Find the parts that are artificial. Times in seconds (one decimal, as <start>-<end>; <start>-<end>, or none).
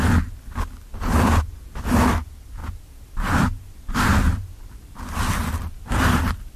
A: 2.6-6.6